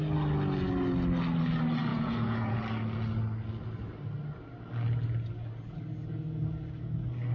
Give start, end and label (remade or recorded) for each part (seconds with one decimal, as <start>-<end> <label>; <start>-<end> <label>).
0.0-1.9 recorded; 1.9-2.6 remade; 2.6-7.3 recorded